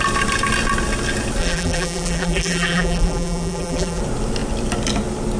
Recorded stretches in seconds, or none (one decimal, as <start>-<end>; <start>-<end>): 0.0-1.4; 4.0-5.4

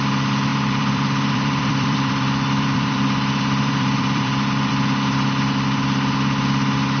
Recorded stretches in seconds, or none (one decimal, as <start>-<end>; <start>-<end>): 0.0-0.5; 4.7-7.0